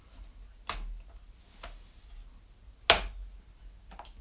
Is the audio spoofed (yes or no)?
no